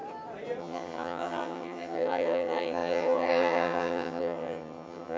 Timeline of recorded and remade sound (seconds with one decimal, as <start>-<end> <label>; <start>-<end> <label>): 0.0-0.6 recorded; 0.6-5.2 remade